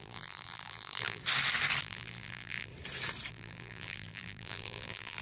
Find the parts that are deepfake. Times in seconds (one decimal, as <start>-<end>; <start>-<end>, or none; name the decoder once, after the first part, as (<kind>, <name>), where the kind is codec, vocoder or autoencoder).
0.0-1.2 (vocoder, BigVGAN v2); 1.8-2.7; 3.3-5.2